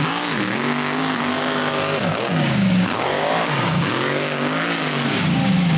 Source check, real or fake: fake